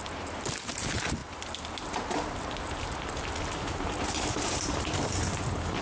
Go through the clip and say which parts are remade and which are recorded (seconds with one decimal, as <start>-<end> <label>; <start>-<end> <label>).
0.0-5.8 recorded